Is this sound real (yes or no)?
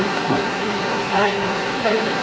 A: no